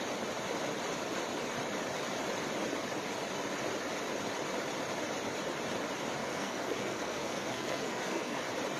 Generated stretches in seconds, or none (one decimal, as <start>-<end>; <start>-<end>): 6.2-8.4